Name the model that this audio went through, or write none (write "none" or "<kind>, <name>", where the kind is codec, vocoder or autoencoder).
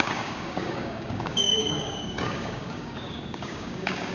codec, DAC